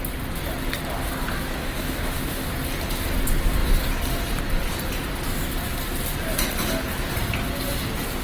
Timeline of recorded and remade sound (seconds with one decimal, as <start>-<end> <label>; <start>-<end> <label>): 0.0-1.6 recorded; 1.6-2.5 remade; 2.5-8.2 recorded